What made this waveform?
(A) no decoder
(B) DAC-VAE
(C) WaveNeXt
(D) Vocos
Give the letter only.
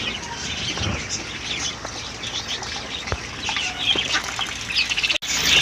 A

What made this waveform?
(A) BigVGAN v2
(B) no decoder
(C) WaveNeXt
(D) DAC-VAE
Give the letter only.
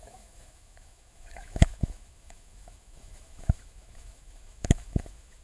D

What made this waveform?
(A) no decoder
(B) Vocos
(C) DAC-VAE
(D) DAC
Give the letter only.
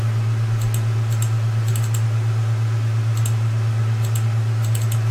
A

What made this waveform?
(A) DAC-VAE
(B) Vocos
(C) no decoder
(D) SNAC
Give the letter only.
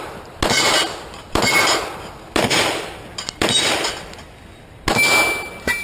C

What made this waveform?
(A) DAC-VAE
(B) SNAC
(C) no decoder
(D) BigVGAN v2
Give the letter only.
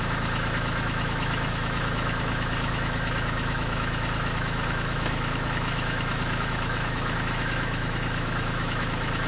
A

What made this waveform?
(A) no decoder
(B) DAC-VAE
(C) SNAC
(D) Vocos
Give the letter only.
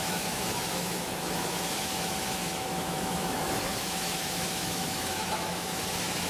B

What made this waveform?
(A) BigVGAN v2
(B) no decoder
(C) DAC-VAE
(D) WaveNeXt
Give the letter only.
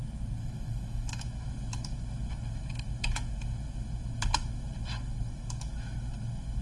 C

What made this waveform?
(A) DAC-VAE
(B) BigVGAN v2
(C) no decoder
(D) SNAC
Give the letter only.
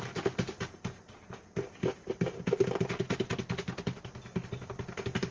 C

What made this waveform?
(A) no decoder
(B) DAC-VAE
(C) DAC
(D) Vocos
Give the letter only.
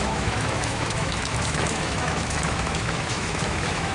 B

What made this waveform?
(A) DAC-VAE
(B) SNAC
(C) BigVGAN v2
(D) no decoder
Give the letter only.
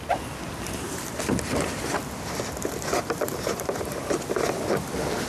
D